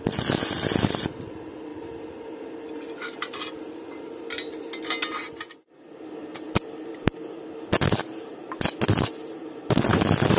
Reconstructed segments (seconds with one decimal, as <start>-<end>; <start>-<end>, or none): none